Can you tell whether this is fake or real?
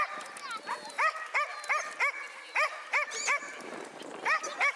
real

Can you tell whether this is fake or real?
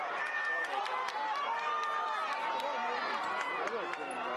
real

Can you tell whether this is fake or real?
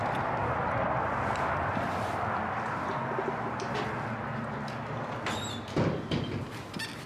real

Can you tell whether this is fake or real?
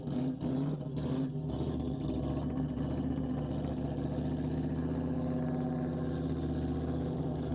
real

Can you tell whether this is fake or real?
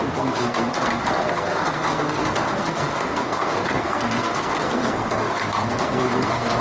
fake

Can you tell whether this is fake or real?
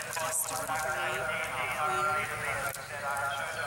real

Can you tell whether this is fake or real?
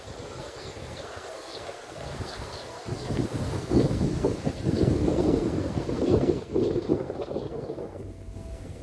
fake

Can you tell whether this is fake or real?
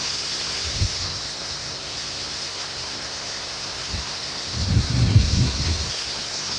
fake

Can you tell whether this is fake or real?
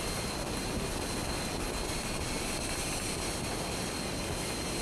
real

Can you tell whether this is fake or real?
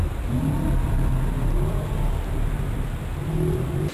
real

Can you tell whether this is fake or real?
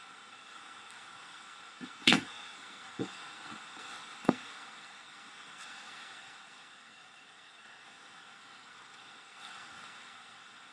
fake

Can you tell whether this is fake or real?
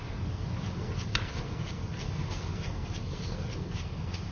fake